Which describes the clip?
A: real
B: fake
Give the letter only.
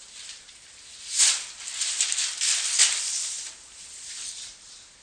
A